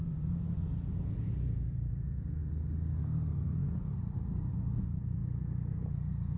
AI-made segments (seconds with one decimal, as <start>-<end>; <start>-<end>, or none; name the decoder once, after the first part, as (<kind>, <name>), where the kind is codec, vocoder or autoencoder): 0.0-2.4 (vocoder, Vocos); 4.5-6.4